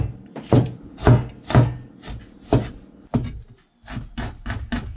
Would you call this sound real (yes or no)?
yes